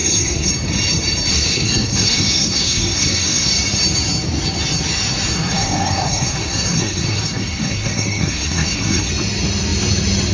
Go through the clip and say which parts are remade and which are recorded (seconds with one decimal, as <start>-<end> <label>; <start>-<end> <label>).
0.0-0.5 remade; 0.5-1.3 recorded; 1.3-3.5 remade; 3.5-5.3 recorded; 5.3-9.1 remade; 9.1-10.3 recorded